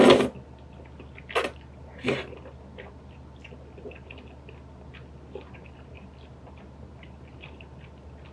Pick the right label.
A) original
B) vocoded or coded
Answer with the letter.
A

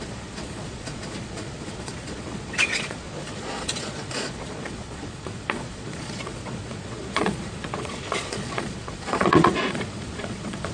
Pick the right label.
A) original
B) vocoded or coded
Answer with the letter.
B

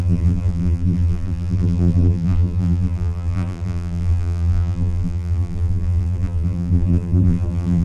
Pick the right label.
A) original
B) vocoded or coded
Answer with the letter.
B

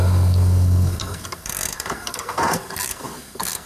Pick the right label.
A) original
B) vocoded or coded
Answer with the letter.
B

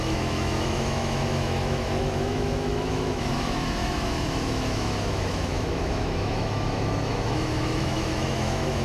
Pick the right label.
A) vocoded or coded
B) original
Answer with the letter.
A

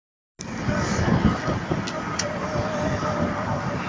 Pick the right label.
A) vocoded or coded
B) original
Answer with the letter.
B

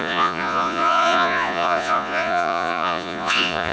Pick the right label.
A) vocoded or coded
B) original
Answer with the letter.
A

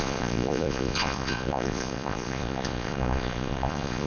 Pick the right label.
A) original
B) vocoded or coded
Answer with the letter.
B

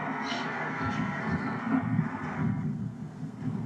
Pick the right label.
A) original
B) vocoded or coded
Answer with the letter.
B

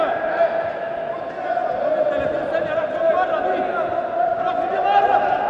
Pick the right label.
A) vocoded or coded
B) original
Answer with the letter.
B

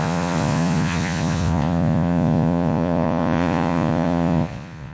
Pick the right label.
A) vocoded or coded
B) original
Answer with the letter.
A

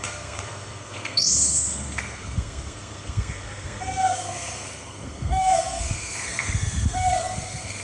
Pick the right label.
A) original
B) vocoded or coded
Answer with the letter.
B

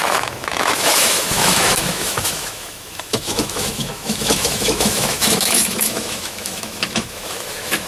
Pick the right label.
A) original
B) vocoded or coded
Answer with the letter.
B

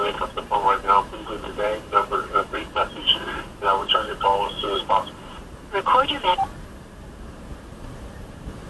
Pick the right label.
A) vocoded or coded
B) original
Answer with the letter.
A